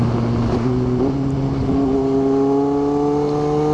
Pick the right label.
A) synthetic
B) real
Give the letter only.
B